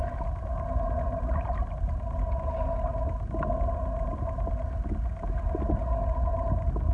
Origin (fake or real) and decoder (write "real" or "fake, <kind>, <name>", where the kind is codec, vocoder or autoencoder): real